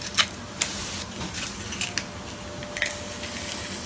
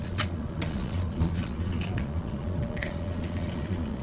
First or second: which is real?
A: first